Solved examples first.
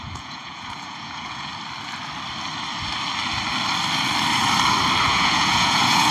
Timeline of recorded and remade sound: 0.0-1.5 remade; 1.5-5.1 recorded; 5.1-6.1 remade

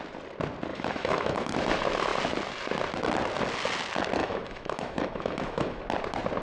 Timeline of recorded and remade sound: 0.0-0.7 recorded; 0.7-1.5 remade; 1.5-4.2 recorded; 4.2-5.8 remade; 5.8-6.4 recorded